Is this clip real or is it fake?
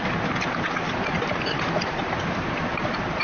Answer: real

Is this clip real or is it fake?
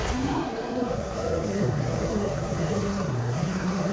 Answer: fake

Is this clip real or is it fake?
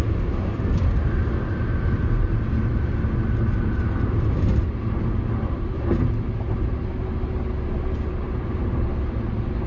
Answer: real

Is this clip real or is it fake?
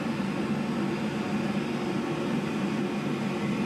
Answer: real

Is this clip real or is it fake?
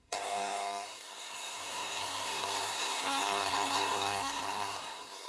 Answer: fake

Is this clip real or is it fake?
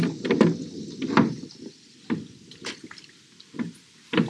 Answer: real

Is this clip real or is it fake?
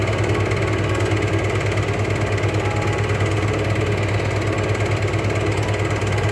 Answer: real